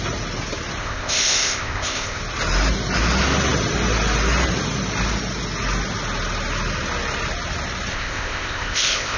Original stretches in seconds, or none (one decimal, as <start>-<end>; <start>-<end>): 0.0-0.8; 2.2-7.9